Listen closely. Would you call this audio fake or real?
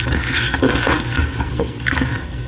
fake